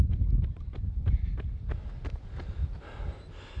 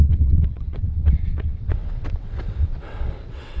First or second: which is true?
first